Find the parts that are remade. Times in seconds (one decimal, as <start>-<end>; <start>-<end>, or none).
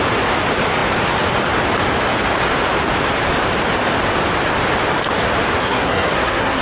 5.6-6.6